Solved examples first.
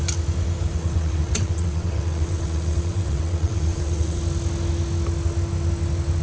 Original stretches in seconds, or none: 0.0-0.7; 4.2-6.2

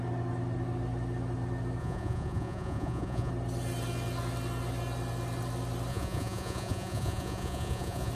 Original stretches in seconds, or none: 0.0-1.8; 3.3-5.9